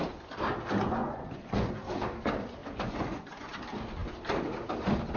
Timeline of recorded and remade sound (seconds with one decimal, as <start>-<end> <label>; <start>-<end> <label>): 0.0-1.0 recorded; 1.0-1.7 remade; 1.7-2.6 recorded; 2.6-3.5 remade; 3.5-5.2 recorded

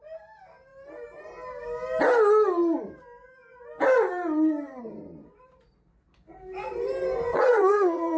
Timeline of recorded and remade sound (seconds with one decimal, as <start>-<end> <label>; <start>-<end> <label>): 0.0-7.3 recorded; 7.3-8.2 remade